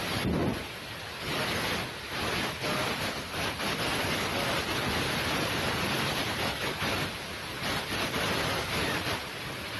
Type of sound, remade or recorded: recorded